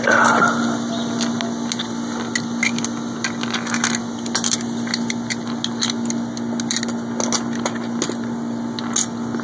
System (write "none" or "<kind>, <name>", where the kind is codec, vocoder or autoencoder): none